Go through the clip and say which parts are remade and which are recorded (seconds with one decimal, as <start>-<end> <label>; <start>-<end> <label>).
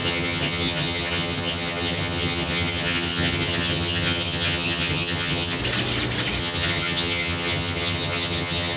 0.0-5.6 remade; 5.6-6.4 recorded; 6.4-8.8 remade